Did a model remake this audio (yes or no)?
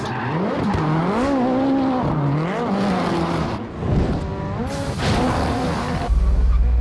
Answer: no